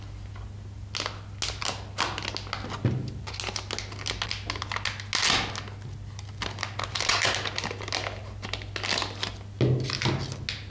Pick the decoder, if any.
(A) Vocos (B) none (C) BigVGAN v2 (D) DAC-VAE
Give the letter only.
B